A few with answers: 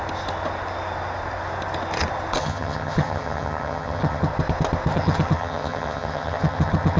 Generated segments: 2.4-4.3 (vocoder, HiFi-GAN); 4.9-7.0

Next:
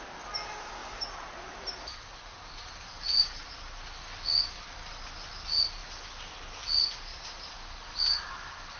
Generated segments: 0.8-3.5 (vocoder, BigVGAN v2)

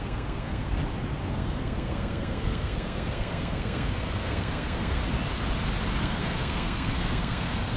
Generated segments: 0.0-0.8 (codec, SNAC); 1.3-5.0; 6.0-7.8

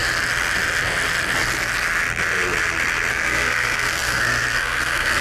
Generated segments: 3.1-5.2 (codec, SNAC)

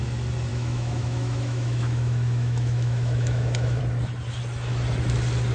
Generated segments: 0.5-3.8 (autoencoder, DAC-VAE)